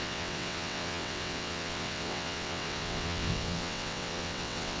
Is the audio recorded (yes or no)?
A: no